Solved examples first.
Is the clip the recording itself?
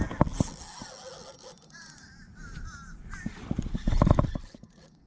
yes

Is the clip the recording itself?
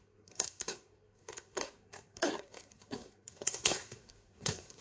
no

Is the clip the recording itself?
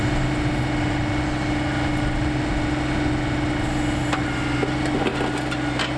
yes